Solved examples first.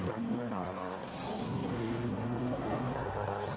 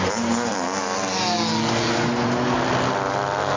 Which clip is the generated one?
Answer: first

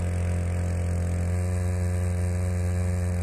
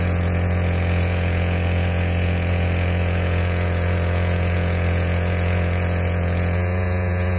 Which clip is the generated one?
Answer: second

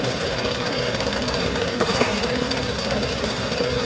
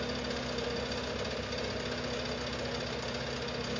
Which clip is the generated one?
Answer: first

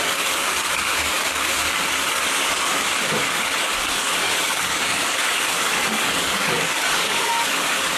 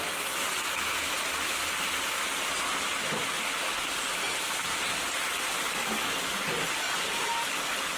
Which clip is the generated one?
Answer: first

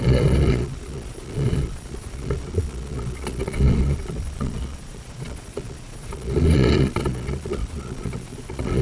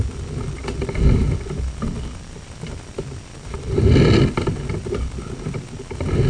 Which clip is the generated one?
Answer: first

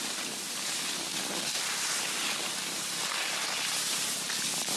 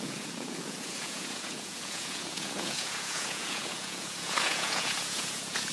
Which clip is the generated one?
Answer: second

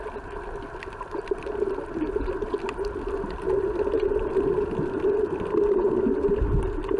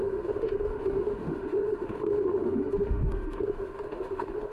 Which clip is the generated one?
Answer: second